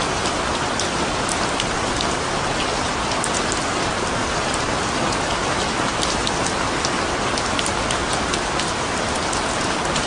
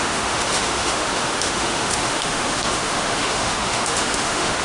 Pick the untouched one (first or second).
first